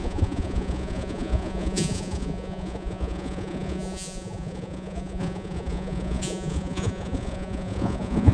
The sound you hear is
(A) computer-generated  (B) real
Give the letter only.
A